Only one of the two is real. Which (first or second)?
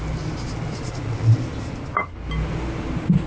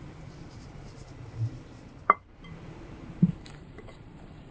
first